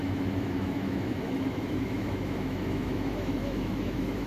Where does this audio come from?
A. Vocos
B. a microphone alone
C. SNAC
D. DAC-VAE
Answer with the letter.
D